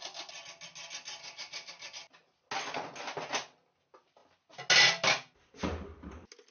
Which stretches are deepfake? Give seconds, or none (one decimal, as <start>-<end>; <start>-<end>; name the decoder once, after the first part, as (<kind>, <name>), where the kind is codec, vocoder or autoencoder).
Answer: none